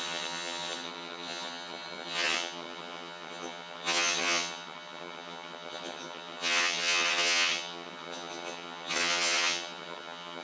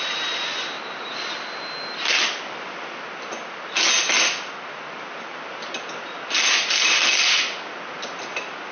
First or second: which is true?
second